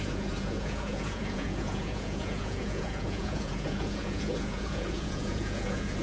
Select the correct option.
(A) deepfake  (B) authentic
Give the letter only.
A